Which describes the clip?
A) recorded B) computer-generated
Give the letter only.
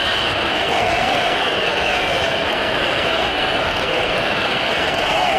B